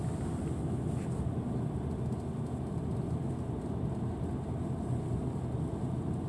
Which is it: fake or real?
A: real